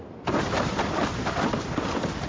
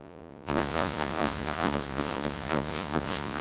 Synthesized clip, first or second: second